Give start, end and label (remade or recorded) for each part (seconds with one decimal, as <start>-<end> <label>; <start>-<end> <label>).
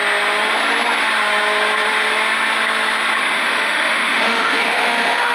0.0-3.2 recorded; 3.2-5.3 remade